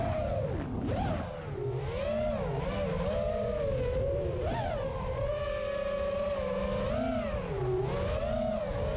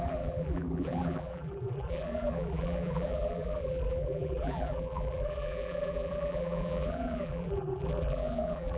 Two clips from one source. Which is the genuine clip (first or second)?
first